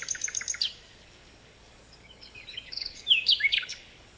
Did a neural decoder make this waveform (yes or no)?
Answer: yes